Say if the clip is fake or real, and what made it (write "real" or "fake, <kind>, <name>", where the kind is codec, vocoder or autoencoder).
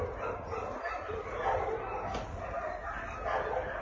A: real